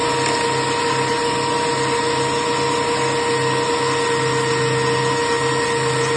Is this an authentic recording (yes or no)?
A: yes